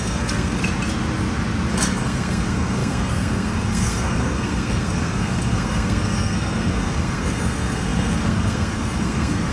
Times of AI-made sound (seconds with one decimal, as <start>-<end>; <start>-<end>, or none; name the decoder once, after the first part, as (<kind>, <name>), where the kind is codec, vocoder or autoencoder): 0.0-0.6 (codec, SNAC); 1.7-9.5